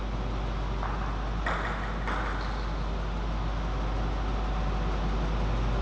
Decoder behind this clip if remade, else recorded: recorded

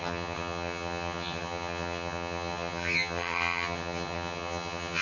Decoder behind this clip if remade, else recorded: remade, vocoder, HiFi-GAN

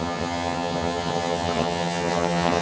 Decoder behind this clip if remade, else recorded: remade, vocoder, HiFi-GAN